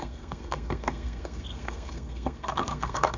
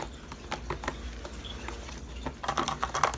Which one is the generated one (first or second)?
first